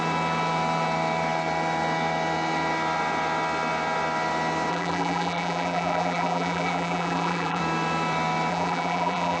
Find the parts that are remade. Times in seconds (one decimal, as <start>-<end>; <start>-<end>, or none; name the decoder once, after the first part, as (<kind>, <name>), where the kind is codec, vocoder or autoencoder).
4.7-7.6 (vocoder, BigVGAN v2); 8.5-9.4